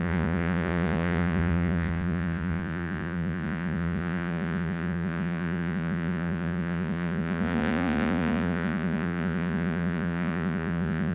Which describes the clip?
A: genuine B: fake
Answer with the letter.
B